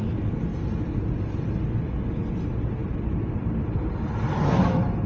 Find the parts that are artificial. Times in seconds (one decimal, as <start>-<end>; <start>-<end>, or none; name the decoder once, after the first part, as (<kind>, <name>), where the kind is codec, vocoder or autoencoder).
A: none